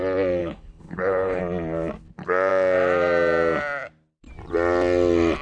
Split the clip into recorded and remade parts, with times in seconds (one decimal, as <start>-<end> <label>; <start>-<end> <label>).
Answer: 0.0-0.4 recorded; 0.4-1.4 remade; 1.4-5.4 recorded